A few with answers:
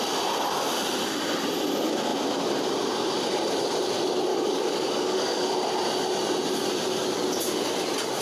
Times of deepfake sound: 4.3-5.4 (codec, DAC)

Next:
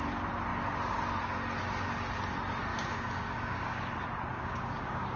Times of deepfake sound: 2.7-3.9 (codec, DAC); 4.3-5.2

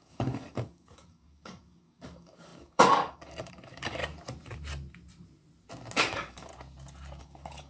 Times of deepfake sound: 0.0-4.0 (codec, DAC); 6.0-6.5; 7.2-7.7

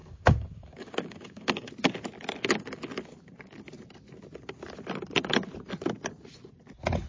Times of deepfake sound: 0.0-1.7 (codec, DAC)

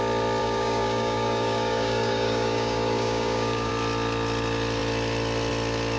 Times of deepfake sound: 0.4-3.7 (codec, DAC)

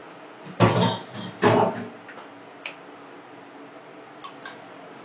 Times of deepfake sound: none